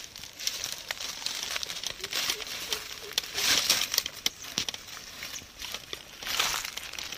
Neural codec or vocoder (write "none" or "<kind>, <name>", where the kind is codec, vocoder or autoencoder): none